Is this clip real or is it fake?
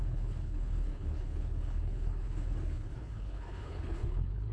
fake